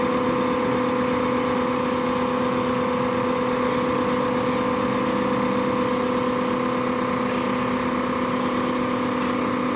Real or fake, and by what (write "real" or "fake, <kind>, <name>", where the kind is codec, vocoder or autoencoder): real